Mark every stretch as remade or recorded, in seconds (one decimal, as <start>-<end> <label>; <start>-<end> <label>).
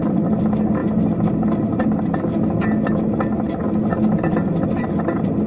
0.0-5.5 recorded